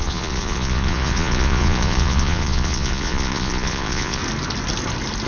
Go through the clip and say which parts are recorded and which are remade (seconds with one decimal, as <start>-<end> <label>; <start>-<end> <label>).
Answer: 0.0-4.2 remade; 4.2-5.3 recorded